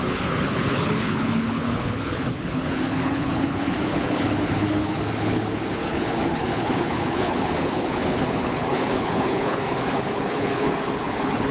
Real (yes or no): no